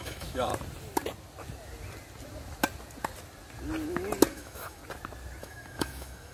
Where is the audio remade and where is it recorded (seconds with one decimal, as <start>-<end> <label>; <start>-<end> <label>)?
0.0-0.5 remade; 0.5-4.3 recorded; 4.3-4.8 remade; 4.8-5.4 recorded; 5.4-6.3 remade